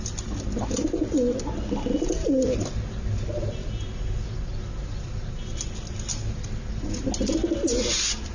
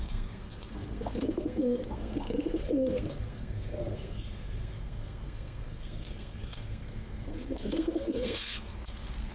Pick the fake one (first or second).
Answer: second